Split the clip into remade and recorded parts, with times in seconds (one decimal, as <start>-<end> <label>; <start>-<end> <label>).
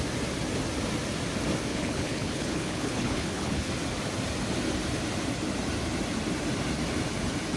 0.0-1.7 recorded; 1.7-3.7 remade; 3.7-7.6 recorded